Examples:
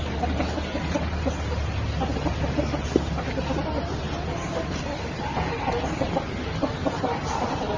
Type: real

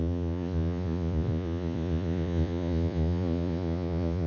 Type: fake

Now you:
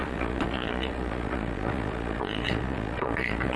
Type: fake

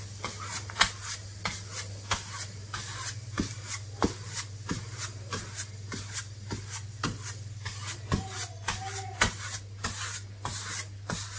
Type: real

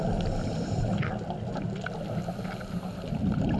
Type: real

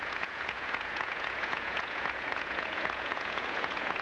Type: fake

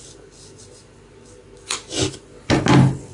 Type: real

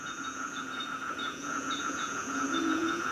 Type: fake